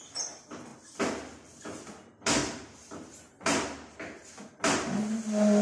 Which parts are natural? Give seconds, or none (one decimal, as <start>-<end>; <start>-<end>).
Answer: 0.0-2.4; 3.2-5.6